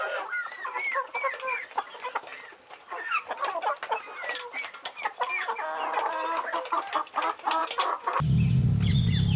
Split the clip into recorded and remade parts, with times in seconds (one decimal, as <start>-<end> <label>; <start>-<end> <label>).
0.0-9.4 recorded